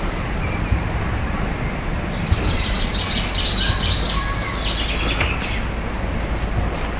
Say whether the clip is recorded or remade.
recorded